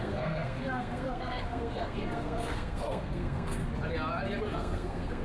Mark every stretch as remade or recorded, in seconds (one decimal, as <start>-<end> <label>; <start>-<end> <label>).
0.0-3.6 remade; 3.6-4.4 recorded; 4.4-5.2 remade